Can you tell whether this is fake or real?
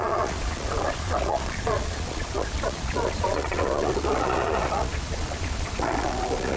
fake